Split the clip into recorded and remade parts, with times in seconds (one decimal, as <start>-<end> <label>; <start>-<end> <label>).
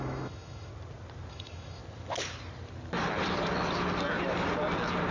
0.0-0.7 remade; 0.7-1.3 recorded; 1.3-1.8 remade; 1.8-5.1 recorded